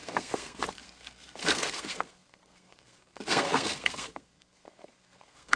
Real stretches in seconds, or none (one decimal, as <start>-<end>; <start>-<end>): none

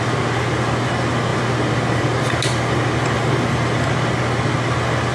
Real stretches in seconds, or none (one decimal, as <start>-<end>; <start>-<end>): 0.0-5.1